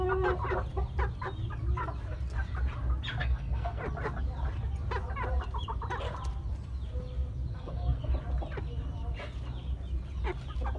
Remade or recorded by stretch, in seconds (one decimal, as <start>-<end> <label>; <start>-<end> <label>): 0.0-3.2 recorded; 3.2-3.8 remade; 3.8-7.5 recorded; 7.5-8.1 remade; 8.1-10.8 recorded